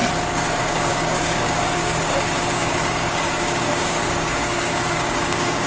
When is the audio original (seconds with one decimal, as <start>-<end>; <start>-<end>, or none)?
0.0-0.6